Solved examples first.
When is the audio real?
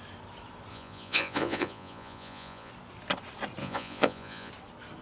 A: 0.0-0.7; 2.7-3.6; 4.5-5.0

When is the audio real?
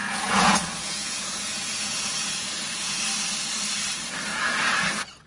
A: 3.0-4.3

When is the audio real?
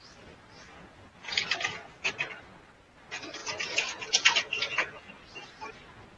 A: 0.0-0.7; 2.1-3.4; 5.1-6.2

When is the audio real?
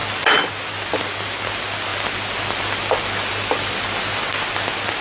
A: 0.0-5.0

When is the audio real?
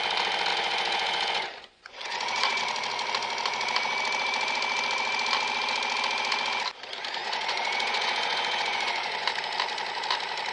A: 0.0-0.5; 2.6-7.2; 9.3-10.5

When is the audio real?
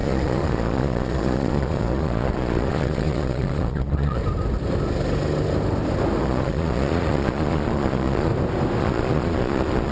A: 4.2-6.2; 8.3-8.8